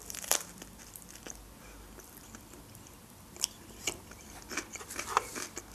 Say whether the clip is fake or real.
fake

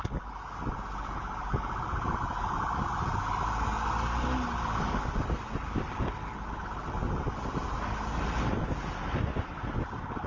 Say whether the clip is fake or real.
real